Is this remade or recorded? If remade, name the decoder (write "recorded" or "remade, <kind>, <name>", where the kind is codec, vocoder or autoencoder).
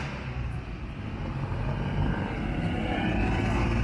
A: recorded